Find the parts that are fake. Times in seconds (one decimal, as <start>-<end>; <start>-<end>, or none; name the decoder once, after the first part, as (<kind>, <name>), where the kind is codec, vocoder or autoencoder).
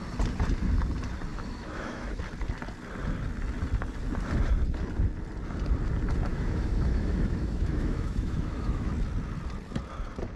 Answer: 1.3-2.2 (autoencoder, DAC-VAE); 6.3-8.9